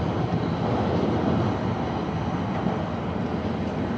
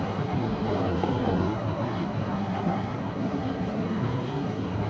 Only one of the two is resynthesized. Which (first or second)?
second